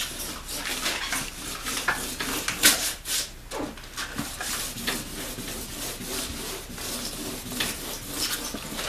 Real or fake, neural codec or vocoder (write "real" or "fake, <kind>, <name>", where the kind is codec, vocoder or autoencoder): real